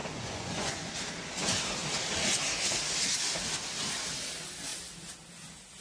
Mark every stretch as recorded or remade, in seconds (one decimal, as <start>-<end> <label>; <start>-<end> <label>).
0.0-0.9 remade; 0.9-5.8 recorded